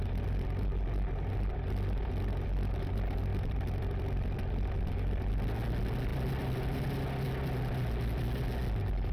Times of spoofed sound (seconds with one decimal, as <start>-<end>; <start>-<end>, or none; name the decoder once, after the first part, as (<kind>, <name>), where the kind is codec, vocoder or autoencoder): 3.3-5.3 (vocoder, BigVGAN v2); 6.1-7.0